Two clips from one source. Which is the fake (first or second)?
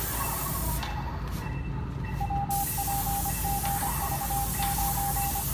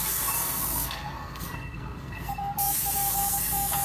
second